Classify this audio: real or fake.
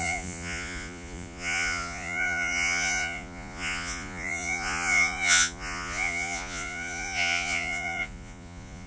fake